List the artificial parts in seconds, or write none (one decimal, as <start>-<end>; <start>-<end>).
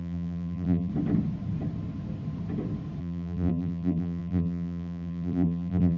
0.0-0.9; 3.0-6.0